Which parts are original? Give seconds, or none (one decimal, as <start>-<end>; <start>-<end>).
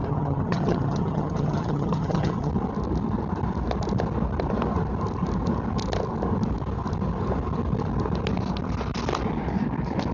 2.5-10.1